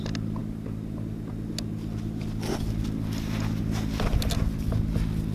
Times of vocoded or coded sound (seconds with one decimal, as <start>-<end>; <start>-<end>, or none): none